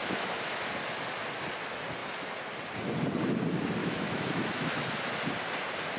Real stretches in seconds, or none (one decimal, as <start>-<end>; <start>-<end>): 0.7-3.8; 4.8-6.0